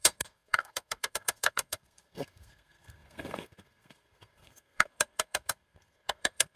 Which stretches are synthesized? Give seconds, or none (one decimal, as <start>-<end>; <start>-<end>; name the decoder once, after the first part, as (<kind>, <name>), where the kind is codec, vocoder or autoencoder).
0.0-6.6 (codec, SNAC)